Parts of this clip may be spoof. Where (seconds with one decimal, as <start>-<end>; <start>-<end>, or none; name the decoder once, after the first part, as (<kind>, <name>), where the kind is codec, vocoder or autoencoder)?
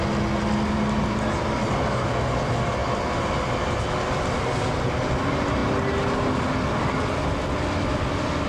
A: none